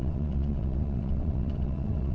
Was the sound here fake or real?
fake